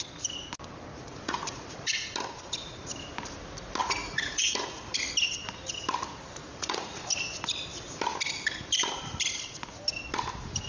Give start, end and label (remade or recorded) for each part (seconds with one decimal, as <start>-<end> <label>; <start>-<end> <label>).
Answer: 0.0-0.9 recorded; 0.9-2.1 remade; 2.1-3.8 recorded; 3.8-4.8 remade; 4.8-6.4 recorded; 6.4-7.0 remade; 7.0-10.7 recorded